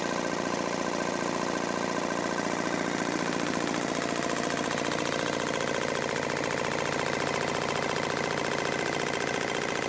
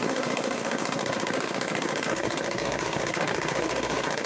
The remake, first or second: second